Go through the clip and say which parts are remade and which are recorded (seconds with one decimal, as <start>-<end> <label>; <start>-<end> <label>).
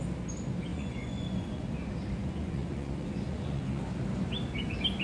0.0-0.7 recorded; 0.7-1.6 remade; 1.6-2.2 recorded; 2.2-3.8 remade; 3.8-5.0 recorded